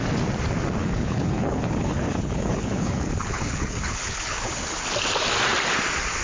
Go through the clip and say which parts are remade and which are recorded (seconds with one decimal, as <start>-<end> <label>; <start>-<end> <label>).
0.0-0.8 recorded; 0.8-4.5 remade; 4.5-6.2 recorded